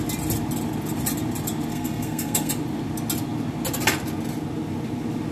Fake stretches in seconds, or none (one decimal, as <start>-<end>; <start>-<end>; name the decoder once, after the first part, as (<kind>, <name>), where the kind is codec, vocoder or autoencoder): 1.7-2.5 (codec, SNAC)